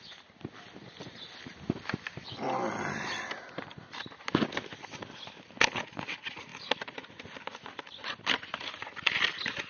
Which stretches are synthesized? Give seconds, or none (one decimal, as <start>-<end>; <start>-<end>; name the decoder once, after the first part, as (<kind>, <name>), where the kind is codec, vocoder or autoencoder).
none